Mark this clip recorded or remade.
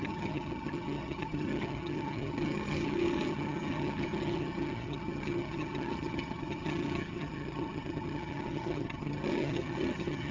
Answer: remade